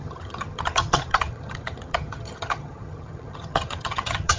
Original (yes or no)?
no